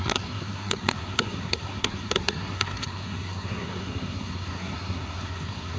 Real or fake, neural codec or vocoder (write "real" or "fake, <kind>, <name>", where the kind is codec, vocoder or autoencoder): fake, codec, SNAC